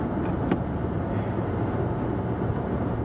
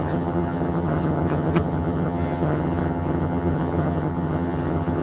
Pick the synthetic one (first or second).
second